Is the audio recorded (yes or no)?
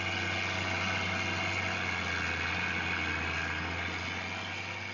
yes